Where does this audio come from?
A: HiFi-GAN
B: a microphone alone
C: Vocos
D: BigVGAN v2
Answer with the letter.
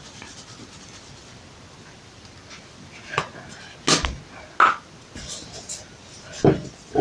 B